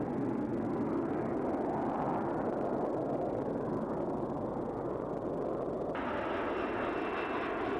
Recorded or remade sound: recorded